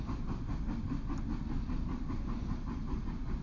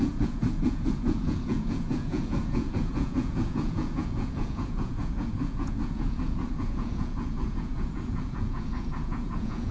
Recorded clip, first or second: first